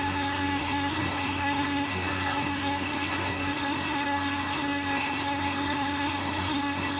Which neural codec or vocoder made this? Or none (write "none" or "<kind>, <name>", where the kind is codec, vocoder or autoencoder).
codec, SNAC